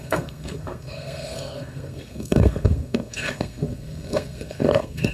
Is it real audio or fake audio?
fake